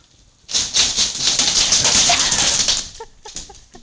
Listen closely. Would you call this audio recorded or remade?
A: recorded